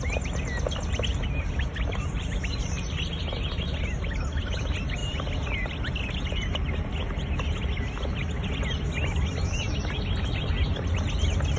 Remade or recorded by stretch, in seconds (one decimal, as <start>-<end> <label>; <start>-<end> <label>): 0.0-1.1 recorded; 1.1-3.1 remade; 3.1-5.0 recorded; 5.0-5.8 remade; 5.8-11.6 recorded